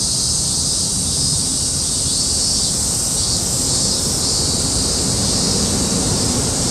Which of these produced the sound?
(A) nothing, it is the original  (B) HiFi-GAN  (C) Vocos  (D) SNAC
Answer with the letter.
A